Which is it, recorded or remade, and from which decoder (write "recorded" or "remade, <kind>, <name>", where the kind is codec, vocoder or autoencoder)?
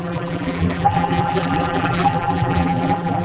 remade, vocoder, BigVGAN v2